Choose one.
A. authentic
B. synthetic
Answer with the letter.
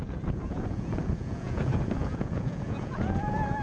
B